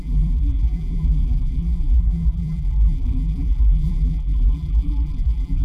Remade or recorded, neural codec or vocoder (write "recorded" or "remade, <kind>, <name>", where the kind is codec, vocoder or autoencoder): remade, vocoder, BigVGAN v2